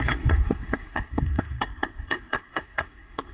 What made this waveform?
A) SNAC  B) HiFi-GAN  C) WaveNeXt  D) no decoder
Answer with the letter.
A